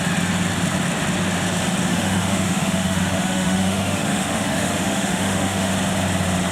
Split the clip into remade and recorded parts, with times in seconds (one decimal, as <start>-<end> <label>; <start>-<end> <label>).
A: 0.0-1.9 recorded; 1.9-5.7 remade; 5.7-6.5 recorded